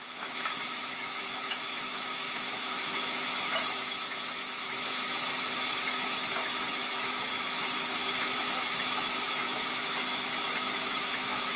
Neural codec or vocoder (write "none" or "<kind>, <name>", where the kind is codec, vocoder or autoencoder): autoencoder, DAC-VAE